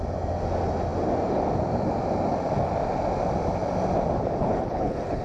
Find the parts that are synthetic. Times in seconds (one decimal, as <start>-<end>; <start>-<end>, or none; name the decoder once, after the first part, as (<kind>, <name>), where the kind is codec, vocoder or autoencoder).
4.4-5.2 (codec, HILCodec)